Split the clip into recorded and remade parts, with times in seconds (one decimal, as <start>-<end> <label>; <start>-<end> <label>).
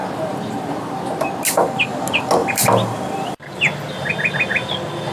0.0-1.3 remade; 1.3-2.4 recorded; 2.4-4.1 remade; 4.1-5.1 recorded